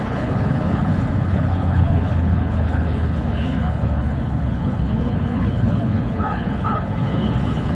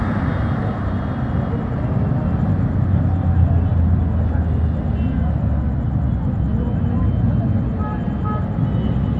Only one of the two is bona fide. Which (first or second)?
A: second